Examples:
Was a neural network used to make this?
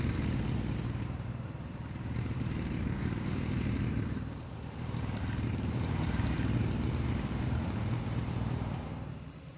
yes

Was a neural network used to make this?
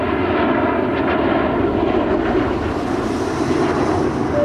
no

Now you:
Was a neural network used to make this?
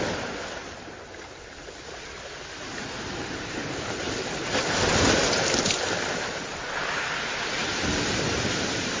no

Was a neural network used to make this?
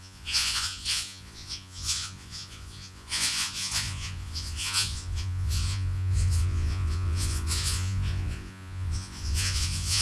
yes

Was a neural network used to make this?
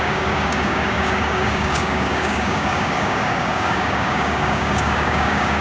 yes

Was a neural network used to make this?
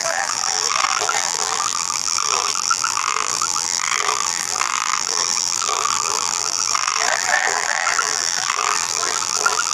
yes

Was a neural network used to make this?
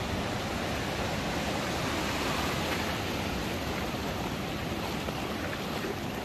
no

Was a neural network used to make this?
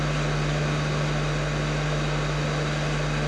no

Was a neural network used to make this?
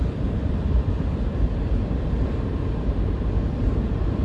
yes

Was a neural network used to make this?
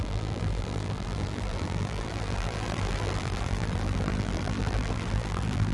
yes